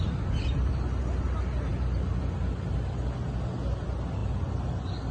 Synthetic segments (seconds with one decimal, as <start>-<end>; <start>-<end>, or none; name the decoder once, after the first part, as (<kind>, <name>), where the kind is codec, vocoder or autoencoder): none